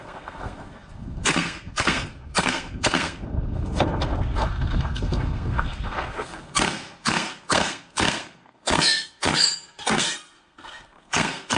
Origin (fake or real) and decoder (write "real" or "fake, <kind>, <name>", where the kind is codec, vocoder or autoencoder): fake, codec, SNAC